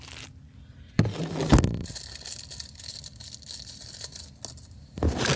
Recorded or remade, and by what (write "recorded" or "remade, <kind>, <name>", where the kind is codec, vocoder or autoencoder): recorded